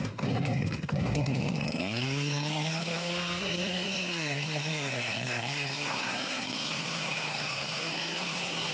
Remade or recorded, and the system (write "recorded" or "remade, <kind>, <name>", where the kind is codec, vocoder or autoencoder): remade, codec, SNAC